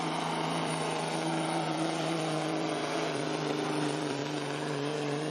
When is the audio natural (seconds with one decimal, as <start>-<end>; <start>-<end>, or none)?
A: 4.2-5.3